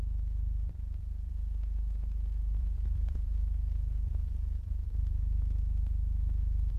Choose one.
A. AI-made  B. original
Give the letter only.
A